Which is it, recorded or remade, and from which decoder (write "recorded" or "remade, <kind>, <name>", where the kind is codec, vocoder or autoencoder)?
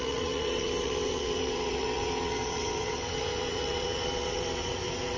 remade, vocoder, WaveNeXt